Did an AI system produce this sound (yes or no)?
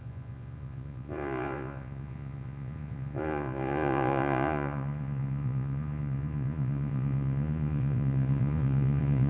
yes